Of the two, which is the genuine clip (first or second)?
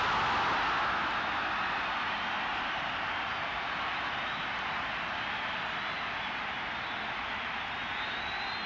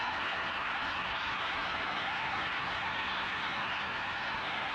first